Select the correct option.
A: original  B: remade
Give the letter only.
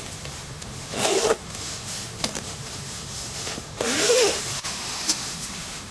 B